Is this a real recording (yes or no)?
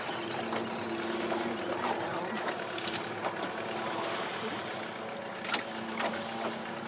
yes